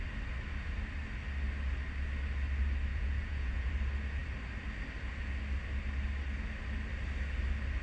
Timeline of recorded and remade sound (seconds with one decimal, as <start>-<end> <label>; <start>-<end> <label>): 0.0-2.9 recorded; 2.9-3.7 remade; 3.7-7.8 recorded